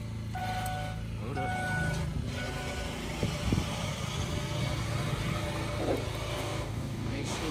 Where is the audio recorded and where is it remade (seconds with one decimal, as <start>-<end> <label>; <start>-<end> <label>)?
0.0-6.3 recorded; 6.3-7.5 remade